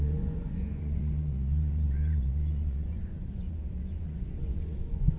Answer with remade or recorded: remade